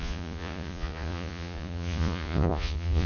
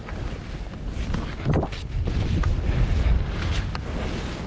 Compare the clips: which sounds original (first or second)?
second